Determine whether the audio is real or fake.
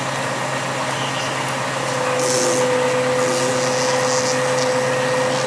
real